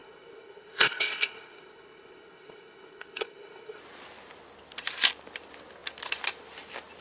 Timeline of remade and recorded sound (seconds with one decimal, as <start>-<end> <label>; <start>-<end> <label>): 0.0-3.8 remade; 3.8-7.0 recorded